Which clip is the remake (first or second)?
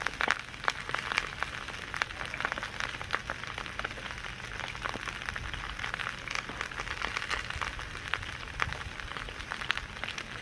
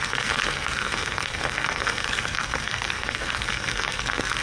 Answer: second